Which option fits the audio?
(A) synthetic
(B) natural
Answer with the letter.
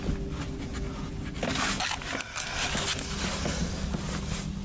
B